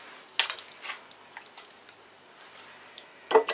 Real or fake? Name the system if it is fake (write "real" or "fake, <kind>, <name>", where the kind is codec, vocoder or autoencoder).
real